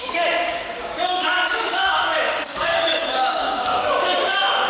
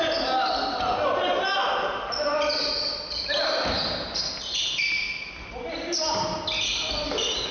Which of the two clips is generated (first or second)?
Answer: first